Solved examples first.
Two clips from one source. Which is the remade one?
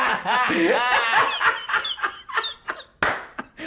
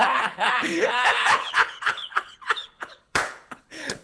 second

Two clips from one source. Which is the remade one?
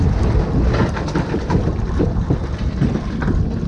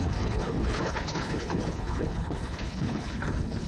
second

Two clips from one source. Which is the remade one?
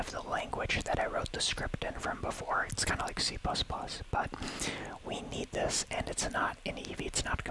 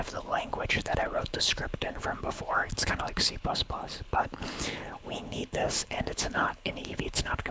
second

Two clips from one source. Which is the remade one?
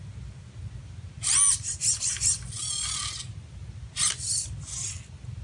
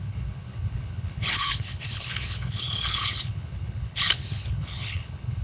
second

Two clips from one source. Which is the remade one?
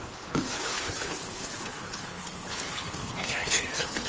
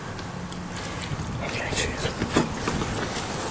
first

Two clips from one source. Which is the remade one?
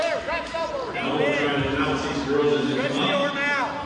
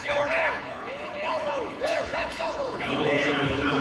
second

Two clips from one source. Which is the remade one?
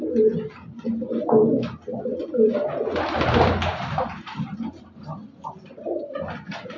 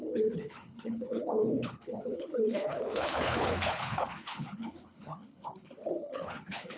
second